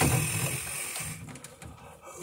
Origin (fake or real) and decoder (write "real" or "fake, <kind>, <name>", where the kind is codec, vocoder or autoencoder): real